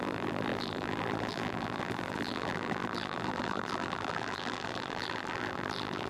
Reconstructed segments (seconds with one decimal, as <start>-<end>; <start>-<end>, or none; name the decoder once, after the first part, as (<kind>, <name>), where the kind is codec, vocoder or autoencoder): 0.0-6.1 (vocoder, BigVGAN v2)

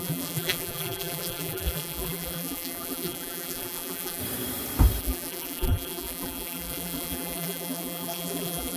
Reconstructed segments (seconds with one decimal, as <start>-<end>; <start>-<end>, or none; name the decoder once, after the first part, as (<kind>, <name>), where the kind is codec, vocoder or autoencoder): 0.0-4.2 (vocoder, BigVGAN v2); 5.0-8.8

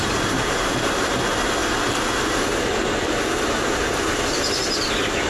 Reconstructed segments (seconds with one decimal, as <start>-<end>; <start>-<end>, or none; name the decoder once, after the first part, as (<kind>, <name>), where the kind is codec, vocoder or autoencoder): none

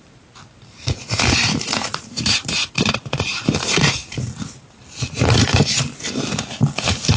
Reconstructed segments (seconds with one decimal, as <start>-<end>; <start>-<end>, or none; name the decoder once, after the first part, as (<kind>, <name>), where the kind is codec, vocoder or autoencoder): 0.0-7.2 (vocoder, BigVGAN v2)